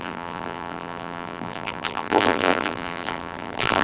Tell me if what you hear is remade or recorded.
remade